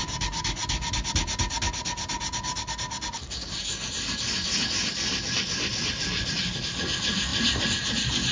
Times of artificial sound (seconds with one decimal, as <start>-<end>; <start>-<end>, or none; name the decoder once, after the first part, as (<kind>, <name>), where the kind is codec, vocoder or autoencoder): none